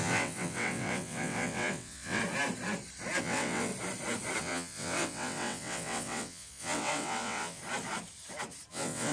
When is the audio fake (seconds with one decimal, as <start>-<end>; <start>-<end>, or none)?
0.0-2.2; 3.2-3.7; 4.4-7.6; 8.7-9.1